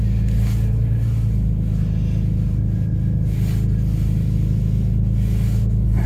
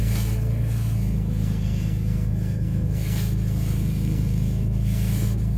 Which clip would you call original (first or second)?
first